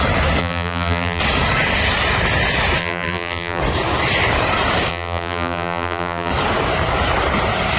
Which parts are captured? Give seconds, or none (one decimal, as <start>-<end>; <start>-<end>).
0.0-0.4; 1.2-2.8; 3.6-4.9; 6.3-7.8